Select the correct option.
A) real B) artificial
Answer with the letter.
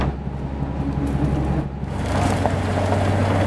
A